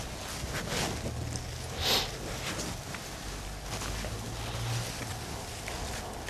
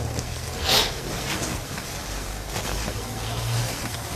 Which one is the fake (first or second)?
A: second